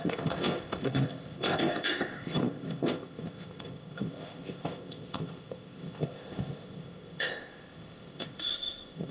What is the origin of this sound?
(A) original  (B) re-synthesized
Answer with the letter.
B